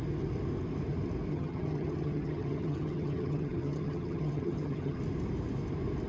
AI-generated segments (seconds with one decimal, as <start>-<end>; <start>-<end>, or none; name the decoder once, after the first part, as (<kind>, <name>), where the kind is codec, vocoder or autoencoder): 1.3-5.0 (vocoder, HiFi-GAN)